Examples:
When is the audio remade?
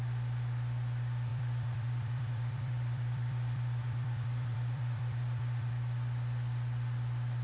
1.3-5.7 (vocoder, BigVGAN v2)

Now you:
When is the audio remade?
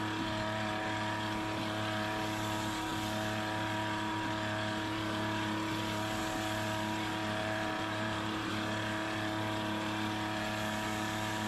7.4-8.5 (vocoder, BigVGAN v2)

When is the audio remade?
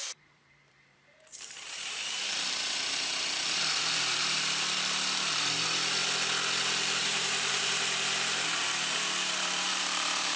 0.0-6.0 (vocoder, BigVGAN v2); 7.0-10.4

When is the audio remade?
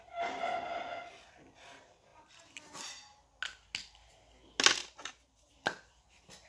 4.8-5.5 (vocoder, BigVGAN v2)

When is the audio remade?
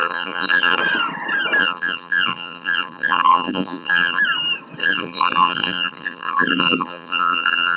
0.0-0.8 (vocoder, BigVGAN v2); 1.6-4.2; 4.8-7.8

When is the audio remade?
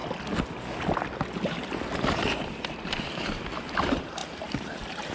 3.1-5.1 (vocoder, BigVGAN v2)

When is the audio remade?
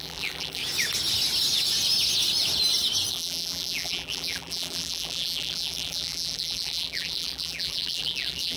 0.0-0.6 (vocoder, BigVGAN v2); 3.1-8.6